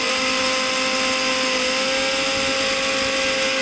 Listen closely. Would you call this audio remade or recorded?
recorded